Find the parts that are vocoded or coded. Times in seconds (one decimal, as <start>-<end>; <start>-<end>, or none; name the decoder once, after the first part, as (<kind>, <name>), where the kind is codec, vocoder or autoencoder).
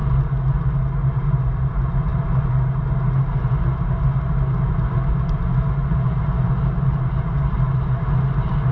none